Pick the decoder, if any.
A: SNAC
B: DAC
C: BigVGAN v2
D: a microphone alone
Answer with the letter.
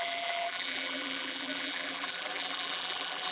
C